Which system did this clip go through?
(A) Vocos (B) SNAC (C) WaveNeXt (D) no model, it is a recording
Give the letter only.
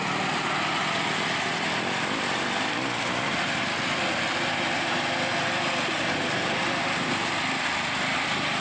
D